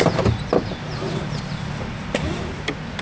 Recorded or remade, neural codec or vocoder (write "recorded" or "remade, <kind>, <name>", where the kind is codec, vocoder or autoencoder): recorded